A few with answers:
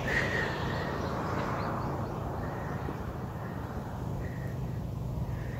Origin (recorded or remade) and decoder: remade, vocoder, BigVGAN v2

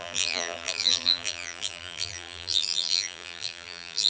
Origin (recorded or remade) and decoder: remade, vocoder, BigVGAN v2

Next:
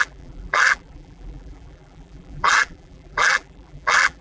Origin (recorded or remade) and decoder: remade, vocoder, BigVGAN v2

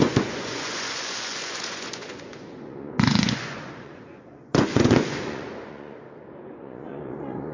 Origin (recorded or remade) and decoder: remade, vocoder, Vocos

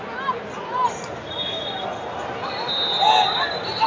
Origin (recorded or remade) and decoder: recorded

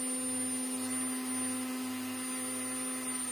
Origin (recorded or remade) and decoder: recorded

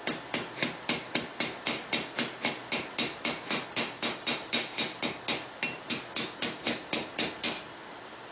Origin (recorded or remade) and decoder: recorded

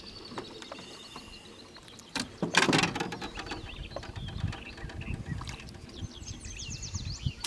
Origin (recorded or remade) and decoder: recorded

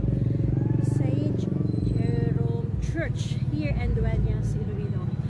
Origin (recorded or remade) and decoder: recorded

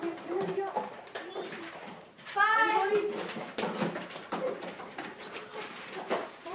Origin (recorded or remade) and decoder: remade, vocoder, BigVGAN v2